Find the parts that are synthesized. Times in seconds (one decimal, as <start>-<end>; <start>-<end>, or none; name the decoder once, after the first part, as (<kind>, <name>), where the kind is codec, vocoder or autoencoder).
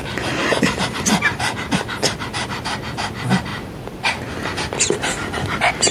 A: none